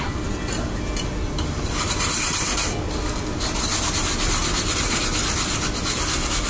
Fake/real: real